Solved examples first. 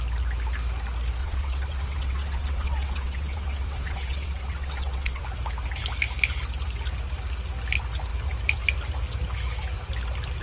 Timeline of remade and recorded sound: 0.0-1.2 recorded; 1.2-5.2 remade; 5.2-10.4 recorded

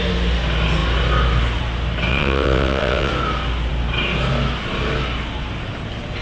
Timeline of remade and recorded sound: 0.0-2.1 recorded; 2.1-3.1 remade; 3.1-6.2 recorded

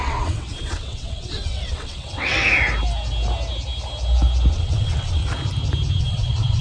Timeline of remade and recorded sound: 0.0-2.4 remade; 2.4-4.5 recorded; 4.5-5.2 remade; 5.2-6.0 recorded; 6.0-6.6 remade